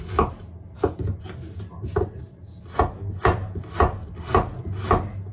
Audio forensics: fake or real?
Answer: real